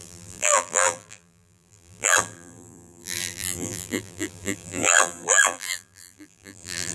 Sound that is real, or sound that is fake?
fake